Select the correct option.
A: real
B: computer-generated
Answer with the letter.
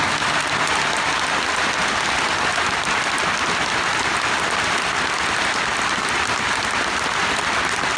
A